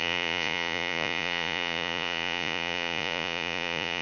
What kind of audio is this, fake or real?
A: fake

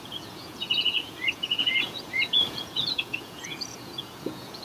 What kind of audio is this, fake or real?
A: fake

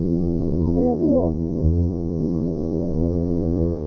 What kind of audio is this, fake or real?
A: fake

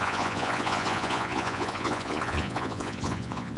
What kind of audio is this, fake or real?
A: fake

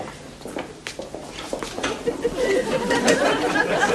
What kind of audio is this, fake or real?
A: real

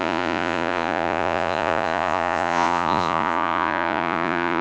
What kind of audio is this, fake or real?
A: fake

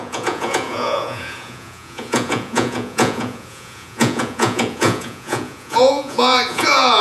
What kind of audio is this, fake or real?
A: fake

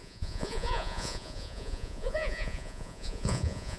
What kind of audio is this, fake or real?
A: fake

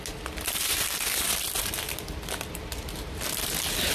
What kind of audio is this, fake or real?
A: real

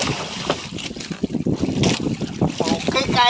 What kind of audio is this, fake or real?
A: real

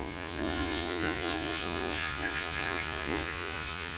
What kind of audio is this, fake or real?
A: fake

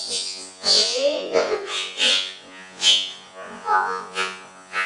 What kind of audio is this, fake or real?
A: fake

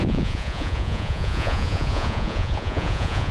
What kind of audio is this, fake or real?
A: fake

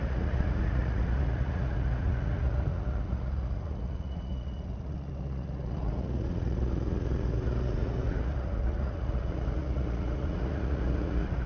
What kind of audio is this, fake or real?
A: fake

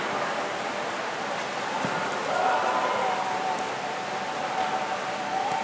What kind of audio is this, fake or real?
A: real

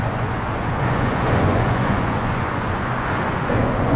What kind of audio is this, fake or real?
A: fake